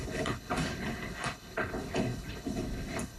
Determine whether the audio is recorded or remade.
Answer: remade